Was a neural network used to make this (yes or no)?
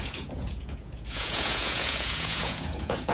yes